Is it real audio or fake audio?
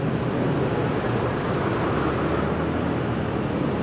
real